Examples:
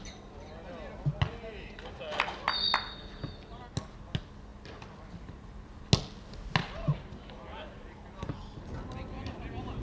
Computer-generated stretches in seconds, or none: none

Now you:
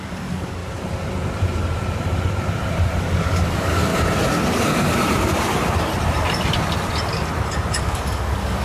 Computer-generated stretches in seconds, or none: 0.0-0.6 (codec, DAC); 3.0-3.9; 7.8-8.6

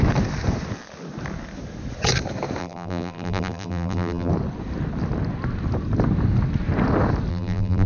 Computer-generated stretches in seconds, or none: 2.6-4.3 (vocoder, BigVGAN v2); 7.3-7.9

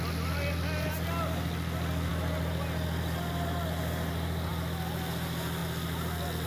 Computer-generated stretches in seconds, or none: none

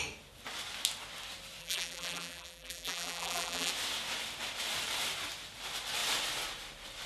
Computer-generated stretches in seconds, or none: 1.6-3.7 (vocoder, BigVGAN v2)

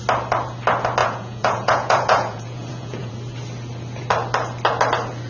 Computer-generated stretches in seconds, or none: 1.0-3.1 (vocoder, Vocos)